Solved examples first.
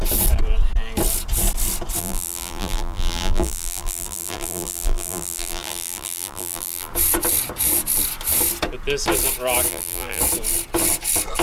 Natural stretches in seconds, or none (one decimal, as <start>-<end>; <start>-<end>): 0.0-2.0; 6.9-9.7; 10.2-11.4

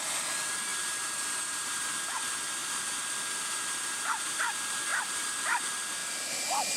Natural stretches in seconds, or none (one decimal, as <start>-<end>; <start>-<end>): 0.0-0.7; 1.8-4.9; 5.6-6.0

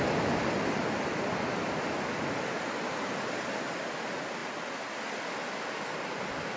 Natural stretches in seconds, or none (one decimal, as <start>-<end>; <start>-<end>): 0.0-6.6

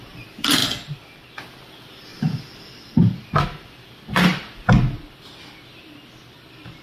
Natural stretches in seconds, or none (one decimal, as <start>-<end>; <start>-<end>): 0.0-0.6; 1.4-2.1; 4.7-6.8

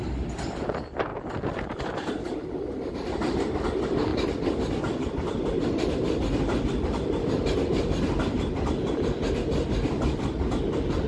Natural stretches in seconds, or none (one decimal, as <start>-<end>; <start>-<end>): 0.0-11.1

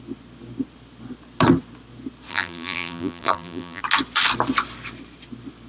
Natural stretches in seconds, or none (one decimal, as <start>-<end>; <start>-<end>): 0.0-2.3; 3.8-5.7

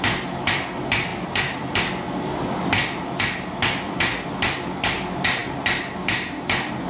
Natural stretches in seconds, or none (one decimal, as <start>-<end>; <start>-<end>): 0.0-6.9